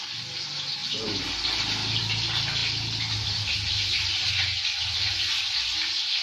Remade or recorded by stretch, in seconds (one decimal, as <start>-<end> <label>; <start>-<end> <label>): 0.0-6.2 recorded